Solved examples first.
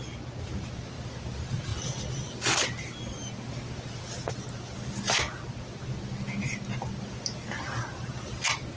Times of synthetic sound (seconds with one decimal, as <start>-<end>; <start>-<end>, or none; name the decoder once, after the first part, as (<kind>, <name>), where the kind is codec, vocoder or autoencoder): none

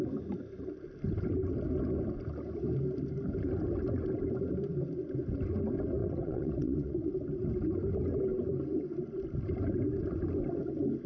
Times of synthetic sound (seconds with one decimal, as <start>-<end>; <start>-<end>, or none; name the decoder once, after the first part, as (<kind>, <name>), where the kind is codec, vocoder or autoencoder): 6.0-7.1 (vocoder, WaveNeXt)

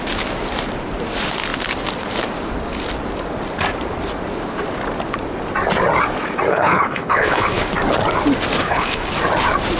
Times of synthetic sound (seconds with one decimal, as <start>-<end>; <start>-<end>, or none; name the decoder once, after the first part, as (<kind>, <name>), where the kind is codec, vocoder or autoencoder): 6.5-7.7 (codec, HILCodec); 8.6-9.1

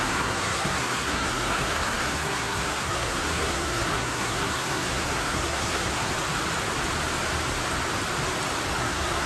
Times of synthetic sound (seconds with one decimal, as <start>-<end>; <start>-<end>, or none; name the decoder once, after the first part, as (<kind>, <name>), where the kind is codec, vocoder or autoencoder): 0.0-6.1 (codec, SNAC); 8.8-9.3